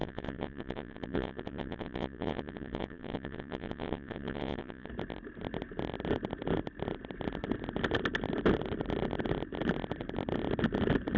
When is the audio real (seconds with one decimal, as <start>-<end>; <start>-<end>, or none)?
4.9-11.2